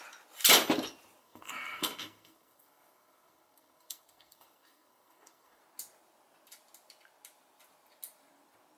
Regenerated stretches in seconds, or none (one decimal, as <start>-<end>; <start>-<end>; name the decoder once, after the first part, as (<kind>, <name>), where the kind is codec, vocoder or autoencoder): 1.2-5.6 (codec, SNAC)